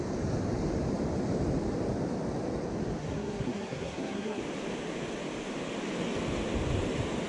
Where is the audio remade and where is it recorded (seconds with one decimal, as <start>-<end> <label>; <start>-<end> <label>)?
0.0-3.0 recorded; 3.0-4.4 remade; 4.4-7.3 recorded